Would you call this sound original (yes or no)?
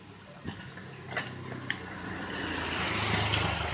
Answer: yes